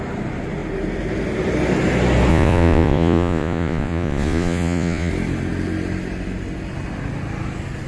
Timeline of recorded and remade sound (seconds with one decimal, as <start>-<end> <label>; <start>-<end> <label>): 0.0-2.3 recorded; 2.3-5.1 remade; 5.1-7.9 recorded